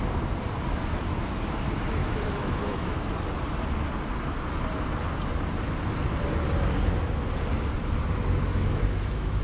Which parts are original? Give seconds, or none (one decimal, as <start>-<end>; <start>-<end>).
0.0-2.0; 3.1-8.5